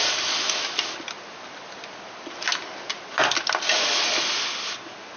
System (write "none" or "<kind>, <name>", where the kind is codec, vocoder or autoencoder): none